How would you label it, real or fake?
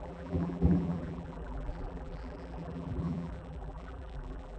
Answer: fake